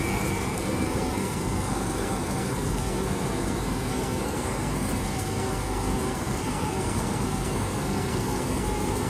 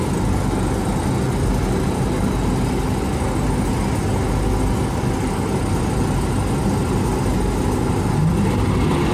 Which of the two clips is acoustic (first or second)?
second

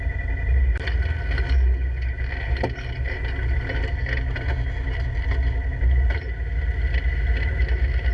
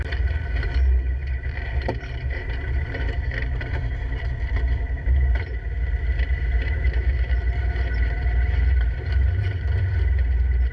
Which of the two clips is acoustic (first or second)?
first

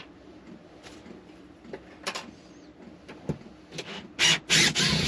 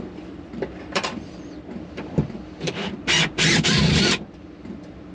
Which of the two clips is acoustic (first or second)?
first